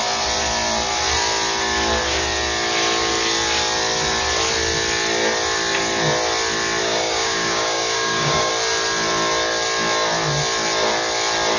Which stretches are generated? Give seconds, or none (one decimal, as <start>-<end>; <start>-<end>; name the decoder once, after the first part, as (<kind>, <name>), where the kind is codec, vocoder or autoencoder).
6.8-8.5 (codec, DAC)